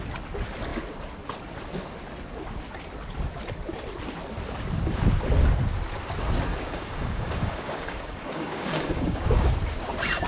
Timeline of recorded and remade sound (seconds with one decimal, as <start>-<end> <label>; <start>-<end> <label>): 0.0-6.5 recorded; 6.5-9.5 remade; 9.5-10.3 recorded